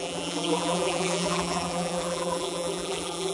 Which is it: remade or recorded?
remade